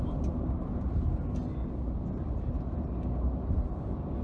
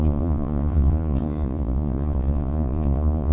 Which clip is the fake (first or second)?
second